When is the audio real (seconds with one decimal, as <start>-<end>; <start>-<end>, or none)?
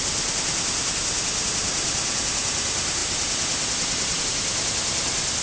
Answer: 0.0-5.4